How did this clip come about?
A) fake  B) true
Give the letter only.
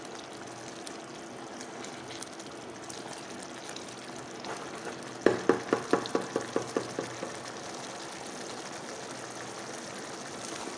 B